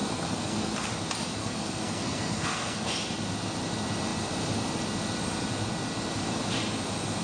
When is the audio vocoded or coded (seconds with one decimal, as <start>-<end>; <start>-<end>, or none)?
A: 0.0-0.7; 1.4-2.9